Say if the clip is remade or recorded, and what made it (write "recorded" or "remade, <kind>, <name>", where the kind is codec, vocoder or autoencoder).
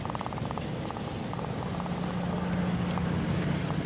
recorded